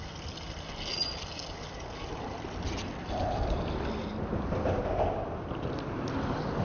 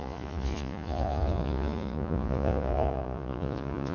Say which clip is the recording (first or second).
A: first